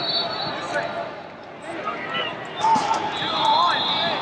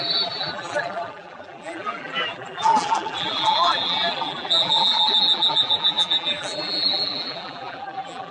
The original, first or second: first